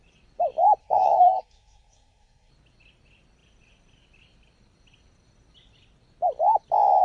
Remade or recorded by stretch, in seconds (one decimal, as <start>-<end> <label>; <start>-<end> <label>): 0.0-0.8 recorded; 0.8-2.5 remade; 2.5-7.0 recorded

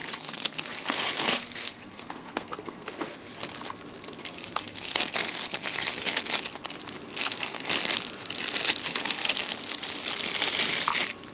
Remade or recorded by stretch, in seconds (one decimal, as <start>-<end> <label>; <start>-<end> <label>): 0.0-2.9 remade; 2.9-4.2 recorded; 4.2-6.2 remade; 6.2-7.2 recorded; 7.2-7.7 remade; 7.7-8.8 recorded; 8.8-9.5 remade; 9.5-11.3 recorded

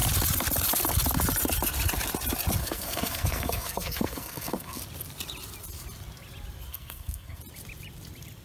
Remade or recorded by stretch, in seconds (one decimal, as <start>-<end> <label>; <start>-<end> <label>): 0.0-2.6 recorded; 2.6-4.8 remade; 4.8-6.7 recorded; 6.7-7.4 remade; 7.4-8.4 recorded

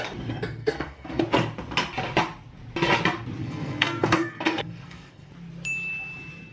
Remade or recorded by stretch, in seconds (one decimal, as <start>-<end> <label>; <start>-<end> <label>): 0.0-0.6 recorded; 0.6-1.2 remade; 1.2-3.4 recorded; 3.4-5.3 remade; 5.3-6.5 recorded

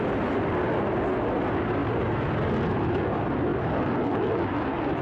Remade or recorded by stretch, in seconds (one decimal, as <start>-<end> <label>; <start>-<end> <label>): 0.0-5.0 recorded